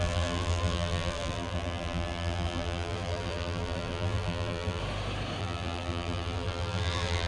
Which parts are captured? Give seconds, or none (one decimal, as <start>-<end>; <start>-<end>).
4.8-5.4